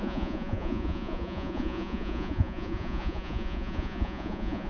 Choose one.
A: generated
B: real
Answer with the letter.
A